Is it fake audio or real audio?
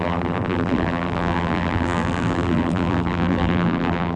fake